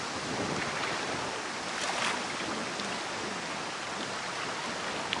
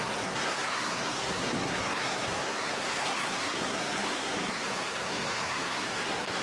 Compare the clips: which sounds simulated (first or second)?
second